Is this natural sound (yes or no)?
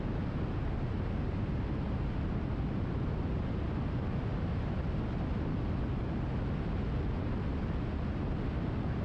yes